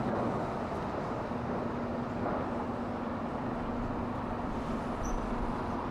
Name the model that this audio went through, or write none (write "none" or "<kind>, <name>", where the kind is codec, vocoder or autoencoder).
none